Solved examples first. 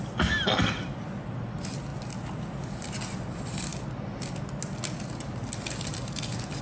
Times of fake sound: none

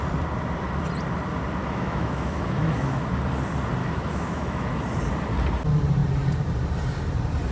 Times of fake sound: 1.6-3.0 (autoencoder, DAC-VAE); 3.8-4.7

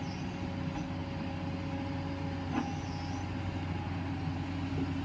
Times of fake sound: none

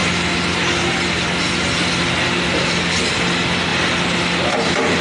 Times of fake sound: none

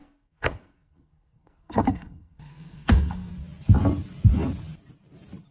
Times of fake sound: 0.0-3.3 (codec, SNAC)

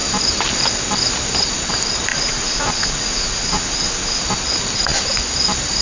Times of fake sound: 2.1-4.2 (vocoder, Vocos)